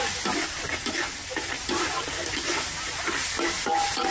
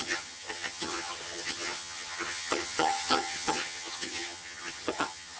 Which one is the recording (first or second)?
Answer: first